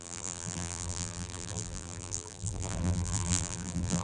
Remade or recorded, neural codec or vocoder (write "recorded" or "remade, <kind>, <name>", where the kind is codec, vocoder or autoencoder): remade, vocoder, BigVGAN v2